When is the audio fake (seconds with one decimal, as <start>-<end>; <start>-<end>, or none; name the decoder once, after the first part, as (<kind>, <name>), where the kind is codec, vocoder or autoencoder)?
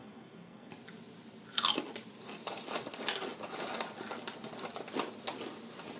0.0-0.7 (codec, SNAC)